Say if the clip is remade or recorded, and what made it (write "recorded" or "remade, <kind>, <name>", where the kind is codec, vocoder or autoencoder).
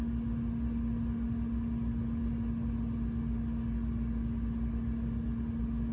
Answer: recorded